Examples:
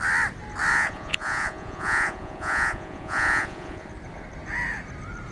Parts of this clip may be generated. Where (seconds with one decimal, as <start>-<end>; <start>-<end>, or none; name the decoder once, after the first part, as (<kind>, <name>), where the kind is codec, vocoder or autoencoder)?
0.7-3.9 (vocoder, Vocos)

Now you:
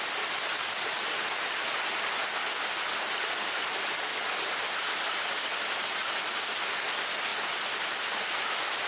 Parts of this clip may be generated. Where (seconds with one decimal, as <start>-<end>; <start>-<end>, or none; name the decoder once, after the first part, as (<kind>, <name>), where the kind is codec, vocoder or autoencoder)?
none

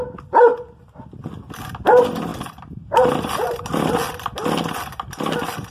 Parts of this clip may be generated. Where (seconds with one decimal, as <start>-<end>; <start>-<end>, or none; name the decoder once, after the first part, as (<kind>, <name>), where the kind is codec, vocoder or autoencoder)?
none

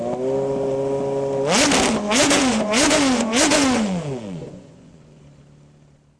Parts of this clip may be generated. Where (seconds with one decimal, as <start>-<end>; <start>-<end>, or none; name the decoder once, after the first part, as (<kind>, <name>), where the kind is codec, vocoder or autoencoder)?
2.2-5.2 (vocoder, Vocos)